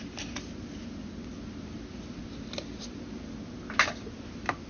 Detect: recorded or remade recorded